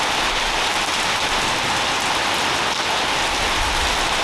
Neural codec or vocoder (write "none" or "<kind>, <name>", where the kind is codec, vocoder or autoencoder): none